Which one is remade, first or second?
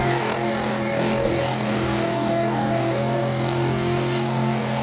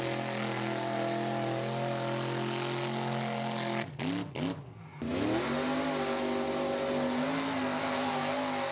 first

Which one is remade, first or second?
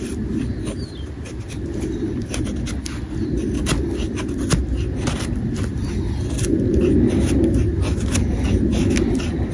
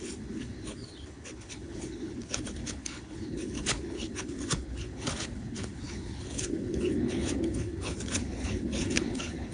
second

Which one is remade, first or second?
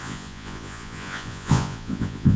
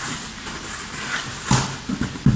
first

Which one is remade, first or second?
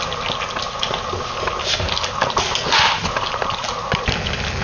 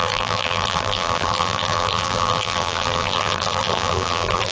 second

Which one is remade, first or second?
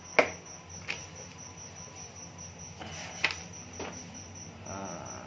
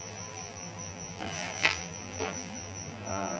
second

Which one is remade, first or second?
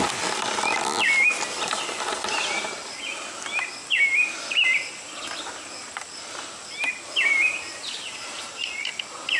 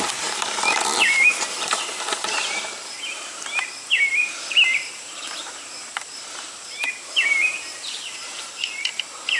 second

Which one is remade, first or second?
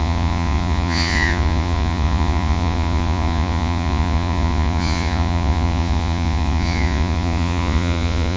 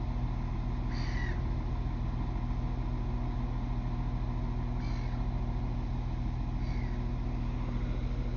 first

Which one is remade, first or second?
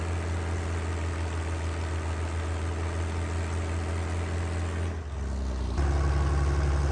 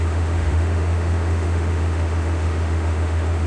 second